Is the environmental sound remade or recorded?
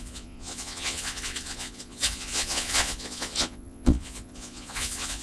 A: remade